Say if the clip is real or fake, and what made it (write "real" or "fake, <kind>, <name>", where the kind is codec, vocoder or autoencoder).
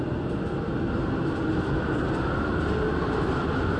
real